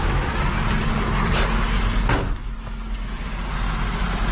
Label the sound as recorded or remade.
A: recorded